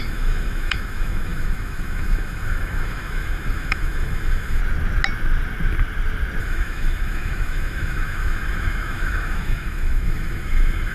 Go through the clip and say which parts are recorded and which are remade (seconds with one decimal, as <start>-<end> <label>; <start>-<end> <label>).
0.0-4.6 remade; 4.6-6.4 recorded; 6.4-10.9 remade